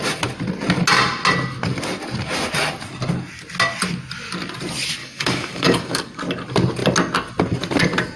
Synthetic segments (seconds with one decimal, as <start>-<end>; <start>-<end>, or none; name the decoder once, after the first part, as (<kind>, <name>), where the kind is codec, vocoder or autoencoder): 5.0-6.2 (codec, DAC)